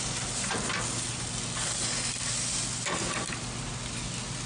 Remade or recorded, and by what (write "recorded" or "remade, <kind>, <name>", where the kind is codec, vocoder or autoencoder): recorded